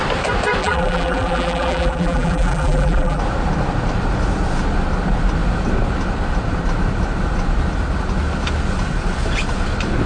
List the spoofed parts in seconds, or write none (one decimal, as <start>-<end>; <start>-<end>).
0.6-3.2